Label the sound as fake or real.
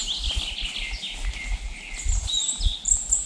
real